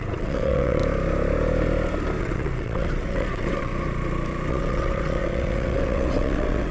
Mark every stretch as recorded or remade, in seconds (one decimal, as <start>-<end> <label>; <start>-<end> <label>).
0.0-0.8 remade; 0.8-2.2 recorded; 2.2-3.7 remade; 3.7-4.5 recorded; 4.5-6.7 remade